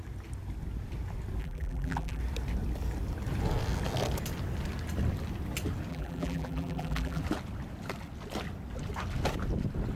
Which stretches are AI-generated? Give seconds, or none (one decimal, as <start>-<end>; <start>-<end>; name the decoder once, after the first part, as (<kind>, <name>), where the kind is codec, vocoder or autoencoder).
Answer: 1.4-2.2 (vocoder, BigVGAN v2); 5.9-7.2